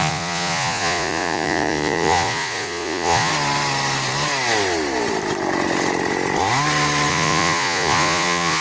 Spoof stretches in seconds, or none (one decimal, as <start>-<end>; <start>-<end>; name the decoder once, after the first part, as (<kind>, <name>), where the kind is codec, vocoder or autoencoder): 0.0-3.3 (vocoder, Vocos); 7.1-8.6